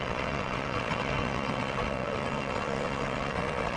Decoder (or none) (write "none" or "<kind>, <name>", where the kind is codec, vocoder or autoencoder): vocoder, WaveNeXt